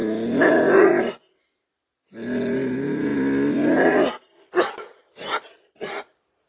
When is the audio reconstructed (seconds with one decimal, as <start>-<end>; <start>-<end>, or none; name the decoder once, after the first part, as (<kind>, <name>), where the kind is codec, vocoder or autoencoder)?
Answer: 3.1-6.5 (vocoder, BigVGAN v2)